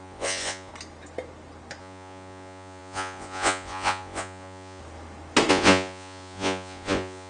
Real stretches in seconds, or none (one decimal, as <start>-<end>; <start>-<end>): 0.7-1.8; 4.8-5.5